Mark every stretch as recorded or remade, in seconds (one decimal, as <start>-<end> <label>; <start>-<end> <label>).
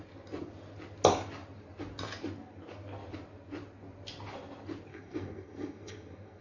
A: 0.0-4.9 recorded; 4.9-6.4 remade